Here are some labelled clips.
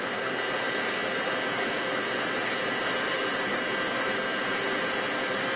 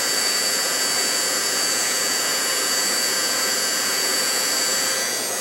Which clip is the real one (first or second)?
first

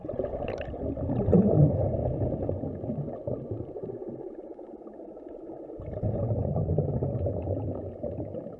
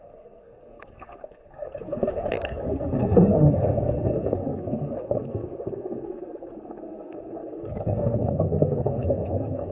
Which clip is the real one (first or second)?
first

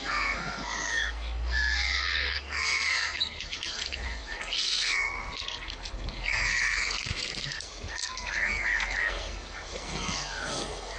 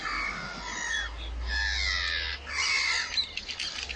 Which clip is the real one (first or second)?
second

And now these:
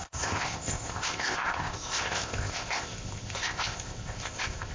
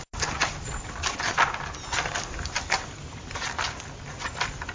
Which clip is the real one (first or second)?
second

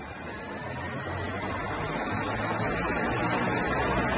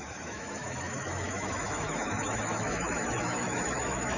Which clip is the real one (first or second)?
first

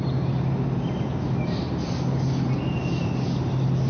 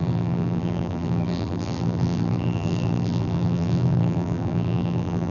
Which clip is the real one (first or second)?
first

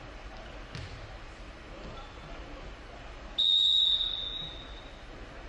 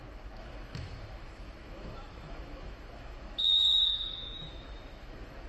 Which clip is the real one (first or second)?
first